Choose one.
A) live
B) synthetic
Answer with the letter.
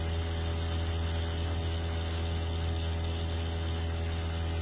A